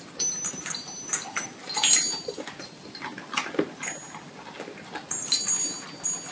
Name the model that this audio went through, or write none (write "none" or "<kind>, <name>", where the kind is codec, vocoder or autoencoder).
none